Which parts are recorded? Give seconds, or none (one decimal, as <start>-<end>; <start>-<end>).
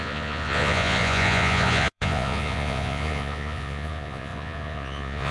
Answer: none